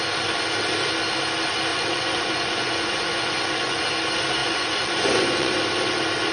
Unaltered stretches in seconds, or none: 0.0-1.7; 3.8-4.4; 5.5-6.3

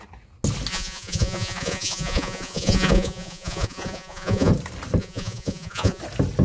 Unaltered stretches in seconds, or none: 0.0-0.7; 4.5-5.0; 6.0-6.4